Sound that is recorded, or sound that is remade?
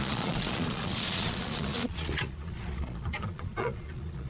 remade